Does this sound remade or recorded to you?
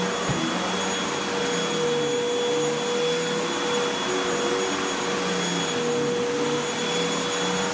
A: recorded